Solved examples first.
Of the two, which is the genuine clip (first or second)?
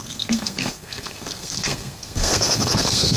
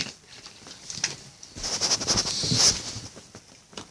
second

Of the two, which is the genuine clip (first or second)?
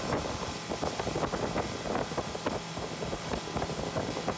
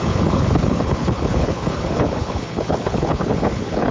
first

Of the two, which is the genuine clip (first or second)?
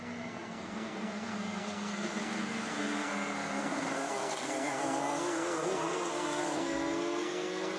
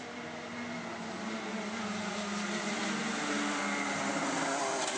second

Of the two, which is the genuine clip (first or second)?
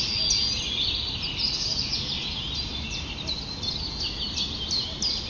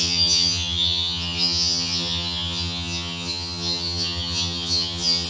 first